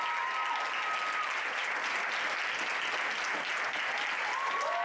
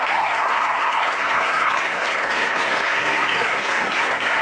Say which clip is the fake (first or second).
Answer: second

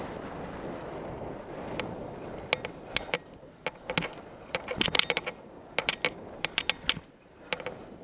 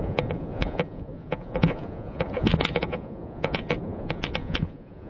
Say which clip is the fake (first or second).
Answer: second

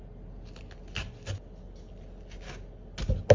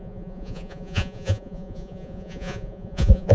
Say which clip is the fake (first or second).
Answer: second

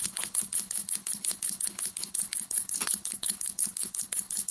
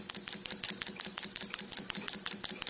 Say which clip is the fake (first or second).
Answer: first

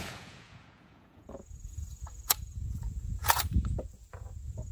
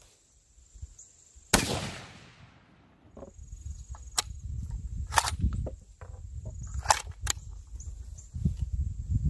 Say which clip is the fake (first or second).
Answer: first